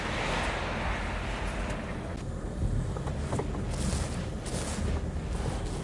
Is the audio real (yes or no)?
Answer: yes